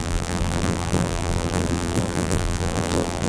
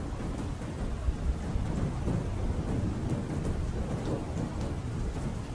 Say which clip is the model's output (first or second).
first